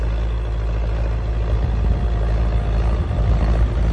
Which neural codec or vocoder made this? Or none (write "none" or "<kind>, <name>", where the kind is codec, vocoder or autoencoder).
none